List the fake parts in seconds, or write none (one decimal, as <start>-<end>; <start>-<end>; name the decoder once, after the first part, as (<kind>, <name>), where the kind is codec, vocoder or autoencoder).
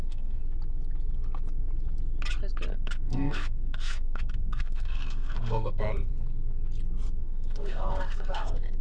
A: 0.0-0.4 (codec, SNAC); 2.7-6.1; 7.2-8.8